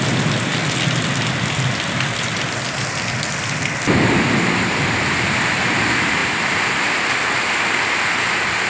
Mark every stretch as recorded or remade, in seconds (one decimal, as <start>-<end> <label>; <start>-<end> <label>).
0.0-8.7 recorded